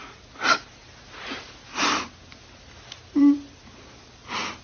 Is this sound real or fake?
real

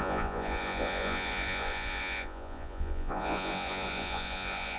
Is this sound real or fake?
fake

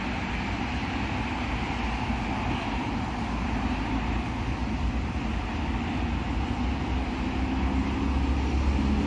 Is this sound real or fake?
real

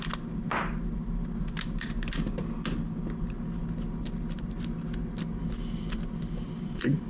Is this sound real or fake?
real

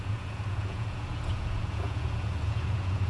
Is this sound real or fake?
fake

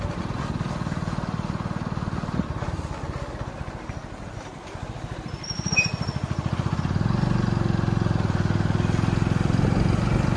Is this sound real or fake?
real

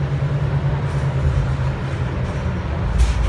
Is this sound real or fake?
real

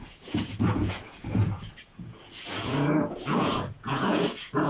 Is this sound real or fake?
fake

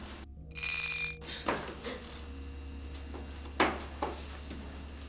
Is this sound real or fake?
real